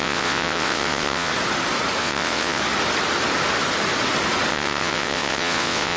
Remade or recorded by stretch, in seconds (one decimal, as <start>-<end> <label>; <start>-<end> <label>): 0.0-1.3 remade; 1.3-2.0 recorded; 2.0-2.6 remade; 2.6-4.5 recorded; 4.5-6.0 remade